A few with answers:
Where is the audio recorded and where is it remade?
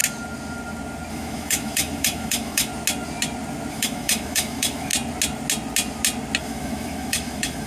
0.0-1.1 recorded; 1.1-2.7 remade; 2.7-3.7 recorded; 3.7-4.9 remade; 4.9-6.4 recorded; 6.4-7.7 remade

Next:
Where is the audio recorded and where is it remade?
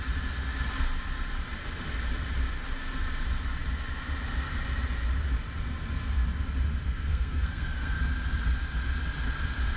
0.0-6.8 recorded; 6.8-8.0 remade; 8.0-9.8 recorded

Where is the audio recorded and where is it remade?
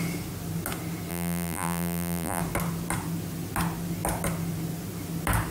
0.0-1.1 recorded; 1.1-2.4 remade; 2.4-5.5 recorded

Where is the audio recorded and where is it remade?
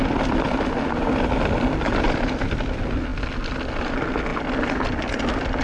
0.0-5.6 recorded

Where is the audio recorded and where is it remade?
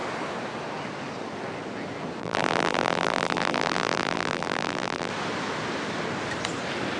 0.0-2.2 recorded; 2.2-5.1 remade; 5.1-7.0 recorded